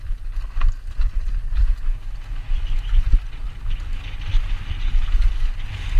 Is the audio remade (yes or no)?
no